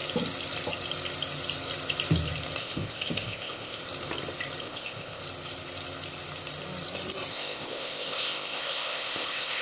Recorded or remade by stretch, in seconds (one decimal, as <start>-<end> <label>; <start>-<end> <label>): 0.0-2.6 recorded; 2.6-3.8 remade; 3.8-4.6 recorded; 4.6-5.2 remade; 5.2-7.3 recorded; 7.3-9.6 remade